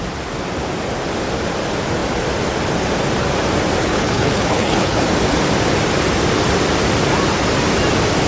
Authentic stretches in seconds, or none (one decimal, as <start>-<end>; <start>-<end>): 0.0-3.8; 5.0-8.3